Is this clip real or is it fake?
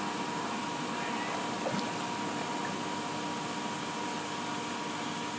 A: real